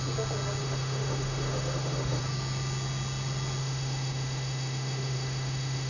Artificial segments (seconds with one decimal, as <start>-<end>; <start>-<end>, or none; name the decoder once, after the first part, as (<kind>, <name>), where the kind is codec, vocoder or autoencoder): 0.6-2.2 (autoencoder, DAC-VAE); 3.6-5.9